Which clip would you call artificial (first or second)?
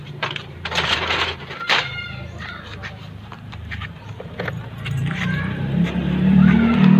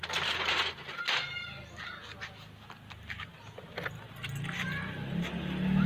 first